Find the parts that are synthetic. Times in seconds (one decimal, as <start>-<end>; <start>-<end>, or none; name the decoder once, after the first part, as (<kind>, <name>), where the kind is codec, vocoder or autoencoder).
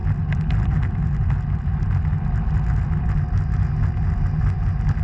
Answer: none